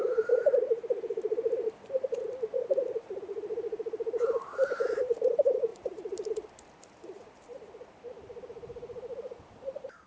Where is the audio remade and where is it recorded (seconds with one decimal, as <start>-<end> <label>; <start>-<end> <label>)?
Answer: 0.0-10.1 remade